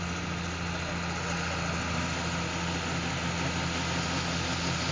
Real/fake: real